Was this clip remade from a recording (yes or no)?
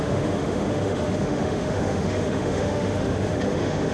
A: yes